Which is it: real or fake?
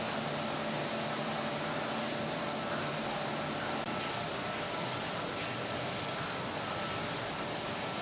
real